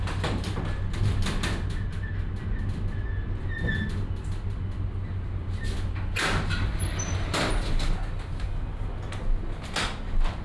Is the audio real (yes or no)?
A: yes